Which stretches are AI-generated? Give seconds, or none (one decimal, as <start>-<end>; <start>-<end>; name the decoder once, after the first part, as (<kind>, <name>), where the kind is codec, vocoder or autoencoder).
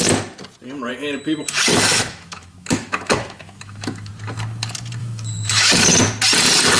1.9-4.1 (autoencoder, DAC-VAE); 5.0-5.7